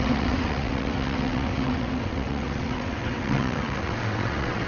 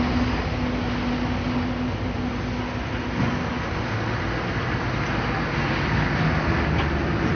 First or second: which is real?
second